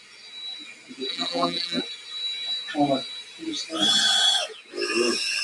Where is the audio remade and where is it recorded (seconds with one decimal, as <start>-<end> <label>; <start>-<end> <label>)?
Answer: 0.0-1.1 recorded; 1.1-1.8 remade; 1.8-5.4 recorded